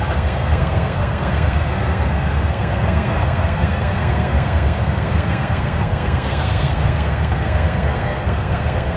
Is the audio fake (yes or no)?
yes